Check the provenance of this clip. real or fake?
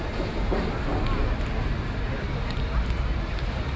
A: real